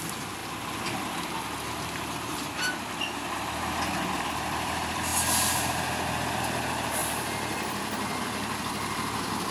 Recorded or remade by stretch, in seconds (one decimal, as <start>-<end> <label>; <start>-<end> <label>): 0.0-0.4 remade; 0.4-4.3 recorded; 4.3-5.1 remade; 5.1-6.3 recorded; 6.3-9.5 remade